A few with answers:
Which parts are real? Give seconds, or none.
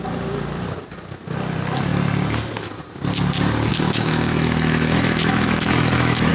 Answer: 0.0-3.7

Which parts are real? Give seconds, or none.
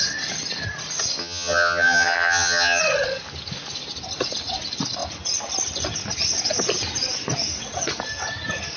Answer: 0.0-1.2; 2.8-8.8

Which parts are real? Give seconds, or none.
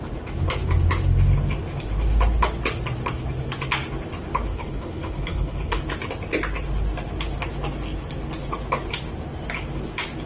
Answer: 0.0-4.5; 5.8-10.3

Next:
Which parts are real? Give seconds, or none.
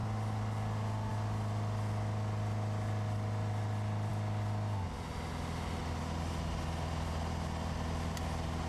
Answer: 0.0-8.7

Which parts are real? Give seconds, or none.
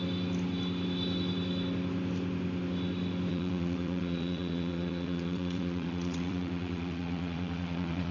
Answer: 0.0-3.3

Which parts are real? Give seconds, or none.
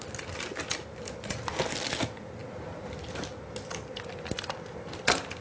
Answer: 0.0-5.4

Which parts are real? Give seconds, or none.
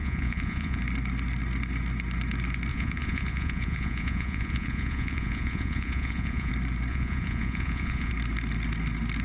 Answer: 0.8-2.7; 6.5-6.9; 8.1-9.2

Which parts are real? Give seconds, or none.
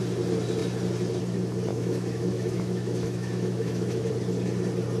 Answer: 0.0-1.7; 4.1-5.0